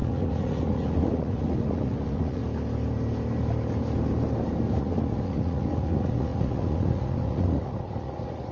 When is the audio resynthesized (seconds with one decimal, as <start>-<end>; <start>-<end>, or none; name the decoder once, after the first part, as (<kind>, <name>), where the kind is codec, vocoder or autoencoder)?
0.0-2.4 (vocoder, Vocos); 4.8-8.5